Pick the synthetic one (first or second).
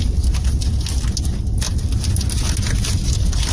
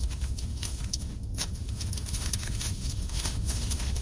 second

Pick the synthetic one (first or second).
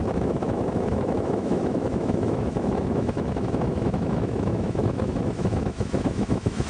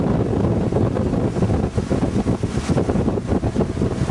first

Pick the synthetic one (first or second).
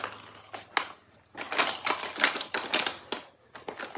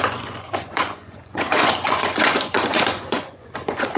second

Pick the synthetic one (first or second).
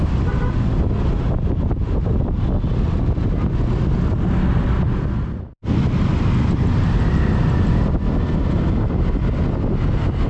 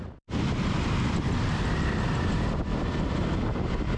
second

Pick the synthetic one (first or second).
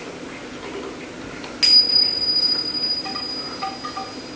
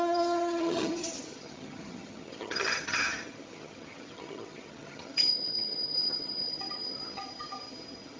second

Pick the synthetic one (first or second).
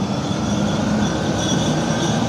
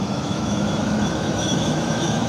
second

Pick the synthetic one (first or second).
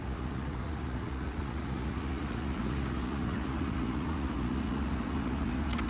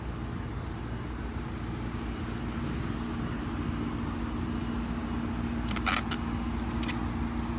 first